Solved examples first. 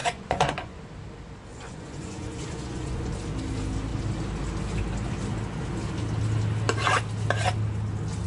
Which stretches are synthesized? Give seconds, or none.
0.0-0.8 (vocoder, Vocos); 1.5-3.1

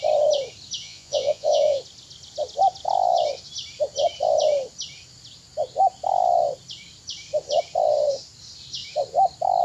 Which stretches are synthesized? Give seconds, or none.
0.8-1.8 (vocoder, Vocos)

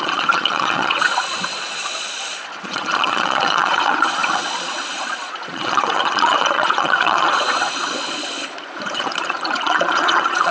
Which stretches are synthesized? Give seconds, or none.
0.0-10.5 (vocoder, Vocos)

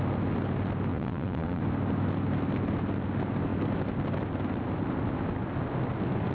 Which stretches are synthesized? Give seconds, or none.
0.9-1.6 (vocoder, Vocos)

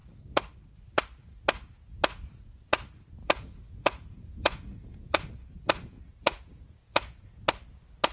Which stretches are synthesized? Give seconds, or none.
3.2-7.2 (vocoder, Vocos)

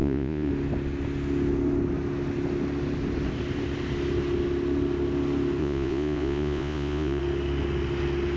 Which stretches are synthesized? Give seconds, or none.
0.0-0.5 (vocoder, Vocos); 5.6-7.2